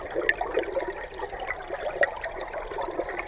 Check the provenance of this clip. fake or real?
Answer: real